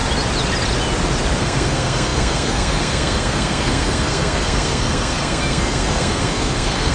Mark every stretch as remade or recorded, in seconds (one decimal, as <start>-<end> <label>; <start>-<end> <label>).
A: 0.0-1.4 recorded; 1.4-6.9 remade